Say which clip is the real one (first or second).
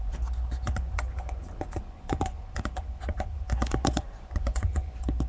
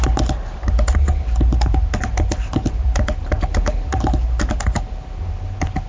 second